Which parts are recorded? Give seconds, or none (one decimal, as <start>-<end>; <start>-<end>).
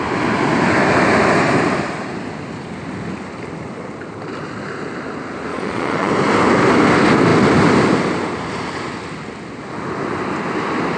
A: 0.0-5.5; 6.1-11.0